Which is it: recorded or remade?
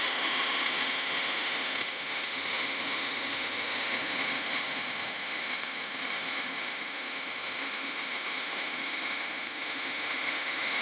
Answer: remade